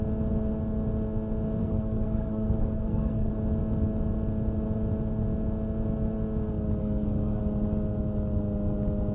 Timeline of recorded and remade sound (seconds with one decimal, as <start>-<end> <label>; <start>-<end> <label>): 0.0-1.6 recorded; 1.6-3.3 remade; 3.3-6.8 recorded; 6.8-7.4 remade; 7.4-9.1 recorded